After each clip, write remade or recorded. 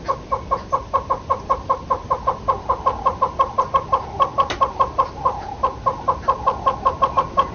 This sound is recorded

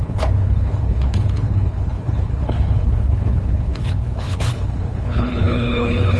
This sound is remade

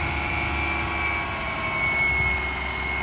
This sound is recorded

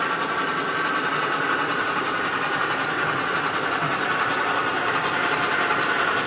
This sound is recorded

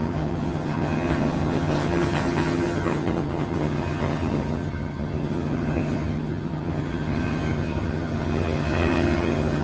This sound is remade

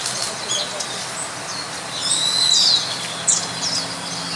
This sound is recorded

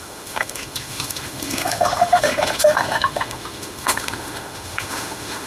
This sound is remade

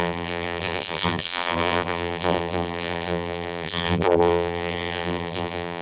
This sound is remade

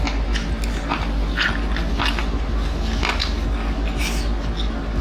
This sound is recorded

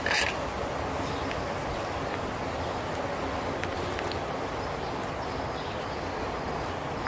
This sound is recorded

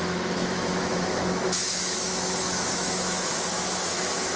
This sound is remade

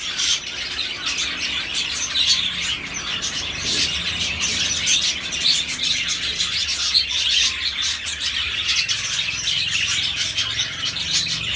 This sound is recorded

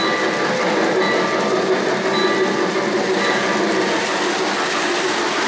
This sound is recorded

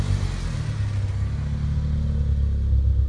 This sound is recorded